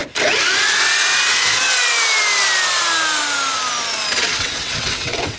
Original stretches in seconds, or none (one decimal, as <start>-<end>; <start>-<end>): 0.0-4.3